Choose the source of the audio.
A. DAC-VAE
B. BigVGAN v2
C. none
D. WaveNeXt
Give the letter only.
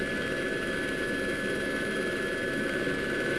A